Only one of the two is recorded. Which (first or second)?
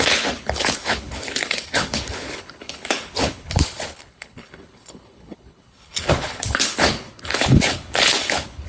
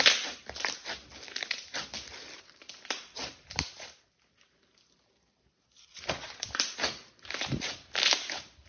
second